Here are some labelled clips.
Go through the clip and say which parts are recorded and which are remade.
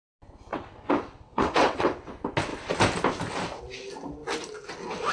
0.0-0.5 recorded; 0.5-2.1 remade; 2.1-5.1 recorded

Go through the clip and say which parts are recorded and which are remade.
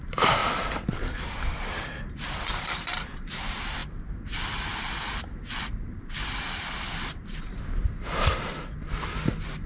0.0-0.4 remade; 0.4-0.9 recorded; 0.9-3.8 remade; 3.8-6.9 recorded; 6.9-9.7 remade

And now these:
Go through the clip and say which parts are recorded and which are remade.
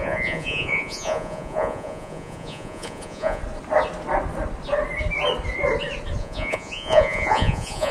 0.0-3.4 remade; 3.4-6.2 recorded; 6.2-7.9 remade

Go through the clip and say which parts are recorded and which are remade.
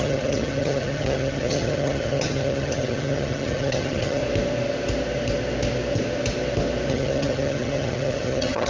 0.0-4.2 remade; 4.2-6.9 recorded; 6.9-8.7 remade